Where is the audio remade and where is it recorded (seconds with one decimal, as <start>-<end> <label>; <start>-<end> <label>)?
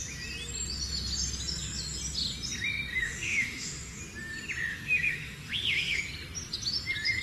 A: 0.0-2.9 recorded; 2.9-4.0 remade; 4.0-4.7 recorded; 4.7-6.0 remade; 6.0-7.2 recorded